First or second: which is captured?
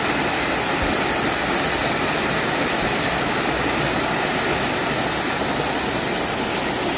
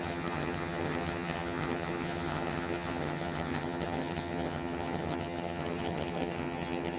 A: first